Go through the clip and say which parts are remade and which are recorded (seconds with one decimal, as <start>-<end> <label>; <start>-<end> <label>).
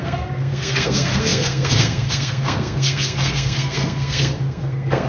0.0-5.1 remade